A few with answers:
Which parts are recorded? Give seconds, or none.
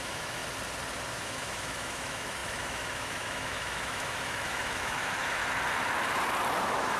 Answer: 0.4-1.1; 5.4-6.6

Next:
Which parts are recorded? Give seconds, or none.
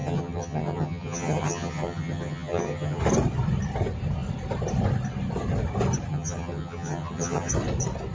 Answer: 3.0-6.1; 7.5-8.1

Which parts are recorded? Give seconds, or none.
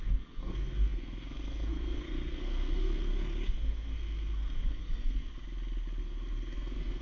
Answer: 5.3-6.0